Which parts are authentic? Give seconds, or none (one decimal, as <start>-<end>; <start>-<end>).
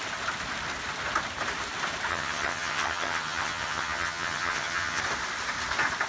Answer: 0.0-2.1; 5.0-6.1